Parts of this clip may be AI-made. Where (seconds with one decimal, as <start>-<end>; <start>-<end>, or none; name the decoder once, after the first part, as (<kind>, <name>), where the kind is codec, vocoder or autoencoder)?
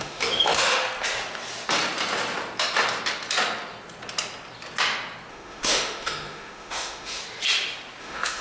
0.0-0.8 (autoencoder, DAC-VAE); 5.3-7.2; 8.0-8.4